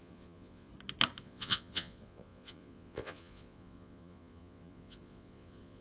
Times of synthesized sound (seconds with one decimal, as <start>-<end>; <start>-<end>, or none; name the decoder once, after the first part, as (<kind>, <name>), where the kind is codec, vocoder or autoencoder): 0.0-0.7 (vocoder, Vocos); 1.2-5.8